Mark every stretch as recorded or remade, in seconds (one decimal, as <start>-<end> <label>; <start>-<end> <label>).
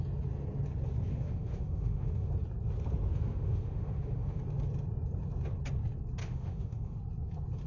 0.0-1.1 recorded; 1.1-2.3 remade; 2.3-3.1 recorded; 3.1-4.4 remade; 4.4-6.2 recorded; 6.2-7.0 remade; 7.0-7.7 recorded